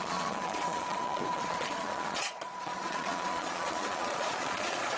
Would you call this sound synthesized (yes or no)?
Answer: yes